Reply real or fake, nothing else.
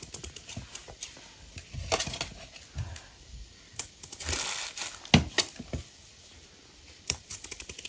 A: real